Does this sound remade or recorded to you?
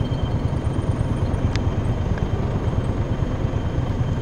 recorded